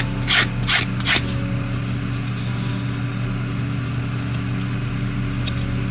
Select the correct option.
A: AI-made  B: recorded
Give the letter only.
B